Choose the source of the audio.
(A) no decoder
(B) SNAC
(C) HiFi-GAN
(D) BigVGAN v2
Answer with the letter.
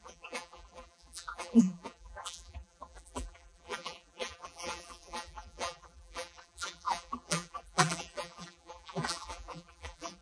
D